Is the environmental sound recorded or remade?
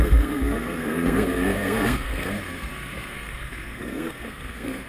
remade